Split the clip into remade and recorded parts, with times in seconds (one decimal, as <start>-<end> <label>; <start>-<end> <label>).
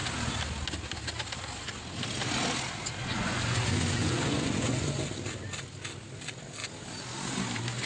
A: 0.0-3.0 recorded; 3.0-5.0 remade; 5.0-7.9 recorded